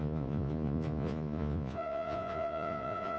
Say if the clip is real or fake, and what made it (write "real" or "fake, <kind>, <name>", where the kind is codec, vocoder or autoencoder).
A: fake, vocoder, Vocos